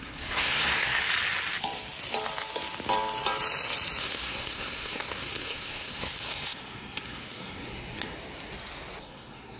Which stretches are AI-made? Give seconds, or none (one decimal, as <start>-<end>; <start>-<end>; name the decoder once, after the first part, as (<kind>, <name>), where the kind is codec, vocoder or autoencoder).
0.0-1.0 (codec, SNAC); 4.0-8.1; 9.0-9.6